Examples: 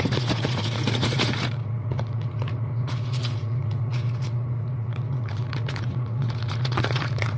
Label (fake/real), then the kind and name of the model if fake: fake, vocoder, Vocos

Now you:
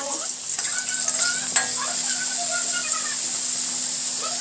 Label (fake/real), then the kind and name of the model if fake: real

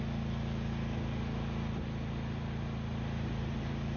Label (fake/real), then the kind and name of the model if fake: real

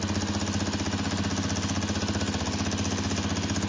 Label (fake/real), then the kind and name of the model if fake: real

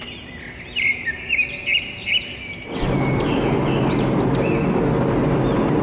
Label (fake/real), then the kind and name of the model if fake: real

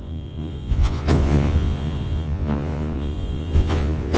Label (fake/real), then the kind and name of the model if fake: fake, vocoder, Vocos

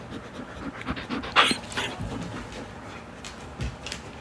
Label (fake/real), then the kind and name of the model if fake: real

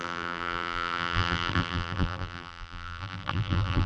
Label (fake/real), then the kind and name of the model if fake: fake, vocoder, BigVGAN v2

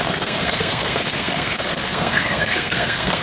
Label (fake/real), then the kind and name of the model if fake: fake, codec, SNAC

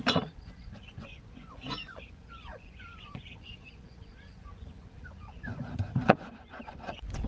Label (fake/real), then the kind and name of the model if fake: fake, vocoder, Vocos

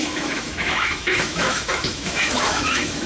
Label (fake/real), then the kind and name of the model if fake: fake, autoencoder, DAC-VAE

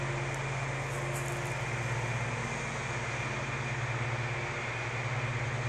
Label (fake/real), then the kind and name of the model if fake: real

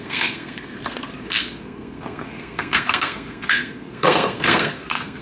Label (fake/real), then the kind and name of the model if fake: fake, codec, SNAC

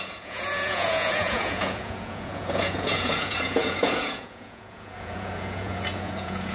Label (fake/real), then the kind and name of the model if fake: fake, vocoder, Vocos